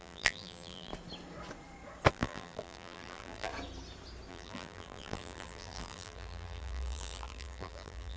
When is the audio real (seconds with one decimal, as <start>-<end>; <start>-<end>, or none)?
0.9-2.1; 3.5-4.3